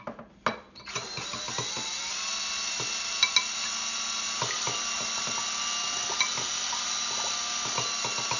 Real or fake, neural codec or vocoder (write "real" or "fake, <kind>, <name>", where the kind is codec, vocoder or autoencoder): real